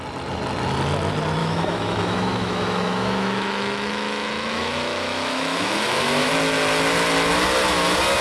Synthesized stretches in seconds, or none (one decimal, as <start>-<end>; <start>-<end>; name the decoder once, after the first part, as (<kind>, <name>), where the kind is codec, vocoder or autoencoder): 1.4-6.3 (autoencoder, DAC-VAE)